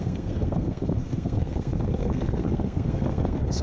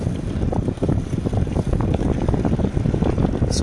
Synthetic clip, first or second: first